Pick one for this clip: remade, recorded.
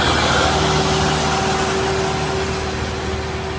recorded